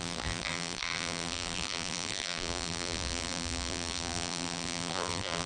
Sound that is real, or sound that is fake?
fake